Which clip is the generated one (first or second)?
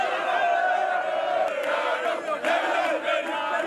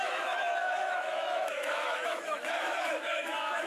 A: second